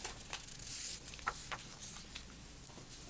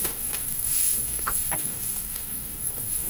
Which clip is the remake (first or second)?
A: second